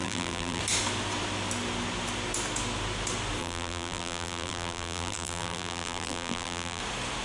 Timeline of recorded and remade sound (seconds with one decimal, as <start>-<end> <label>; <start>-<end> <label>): 0.0-0.6 remade; 0.6-3.4 recorded; 3.4-6.8 remade; 6.8-7.2 recorded